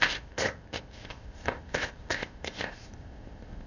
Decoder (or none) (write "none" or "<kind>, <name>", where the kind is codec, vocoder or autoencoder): codec, ZipCodec